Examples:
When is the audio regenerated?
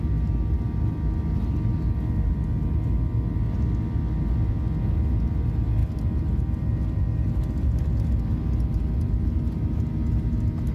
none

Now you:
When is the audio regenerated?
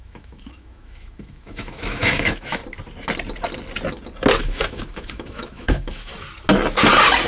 0.0-2.6 (autoencoder, DAC-VAE); 4.4-6.1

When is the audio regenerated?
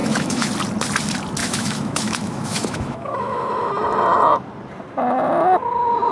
0.0-0.5 (autoencoder, DAC-VAE); 1.4-3.7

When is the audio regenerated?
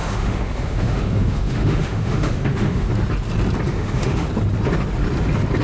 0.0-2.9 (autoencoder, DAC-VAE); 3.7-4.3